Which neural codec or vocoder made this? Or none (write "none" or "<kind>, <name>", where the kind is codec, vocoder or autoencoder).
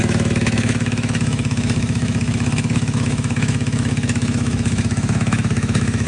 autoencoder, DAC-VAE